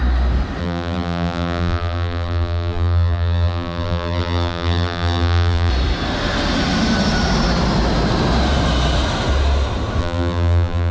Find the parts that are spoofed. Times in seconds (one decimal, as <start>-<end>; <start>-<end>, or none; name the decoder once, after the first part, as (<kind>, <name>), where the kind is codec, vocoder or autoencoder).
0.6-5.7 (vocoder, BigVGAN v2); 10.0-10.9